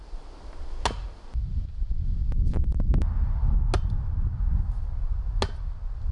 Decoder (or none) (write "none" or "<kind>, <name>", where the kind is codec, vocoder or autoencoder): none